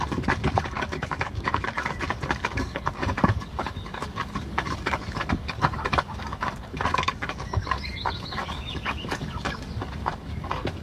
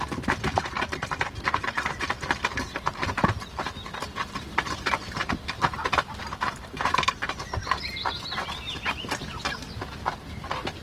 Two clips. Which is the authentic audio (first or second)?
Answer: second